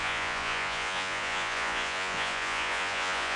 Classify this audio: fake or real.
fake